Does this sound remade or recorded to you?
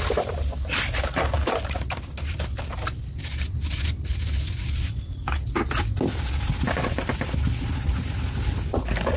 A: recorded